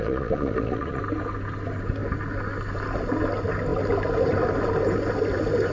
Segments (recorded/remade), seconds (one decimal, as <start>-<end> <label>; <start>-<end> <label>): 0.0-1.0 remade; 1.0-5.7 recorded

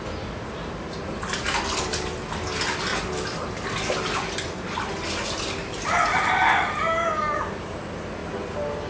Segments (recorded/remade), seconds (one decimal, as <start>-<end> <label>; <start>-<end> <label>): 0.0-8.9 recorded

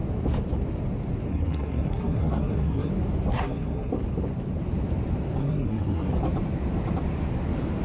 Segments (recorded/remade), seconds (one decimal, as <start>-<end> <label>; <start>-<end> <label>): 0.0-1.3 recorded; 1.3-2.9 remade; 2.9-3.3 recorded; 3.3-3.9 remade; 3.9-5.4 recorded; 5.4-6.1 remade; 6.1-7.8 recorded